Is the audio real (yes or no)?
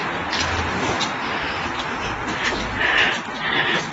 yes